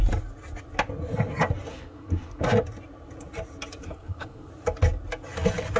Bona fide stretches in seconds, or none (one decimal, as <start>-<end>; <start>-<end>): 0.0-1.7; 2.4-3.8; 4.5-5.8